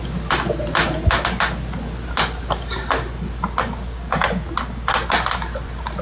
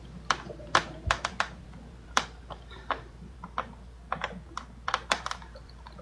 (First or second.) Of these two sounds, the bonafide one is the first